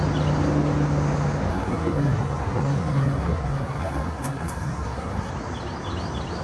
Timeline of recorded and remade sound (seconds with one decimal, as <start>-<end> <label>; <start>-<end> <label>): 0.0-1.5 recorded; 1.5-5.3 remade; 5.3-6.4 recorded